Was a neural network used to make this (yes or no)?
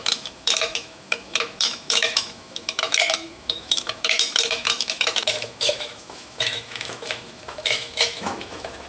yes